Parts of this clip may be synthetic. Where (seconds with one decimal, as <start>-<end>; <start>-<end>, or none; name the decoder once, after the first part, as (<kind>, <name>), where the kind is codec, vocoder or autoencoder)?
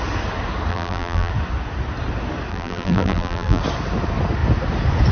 0.7-1.3 (vocoder, BigVGAN v2); 2.5-3.6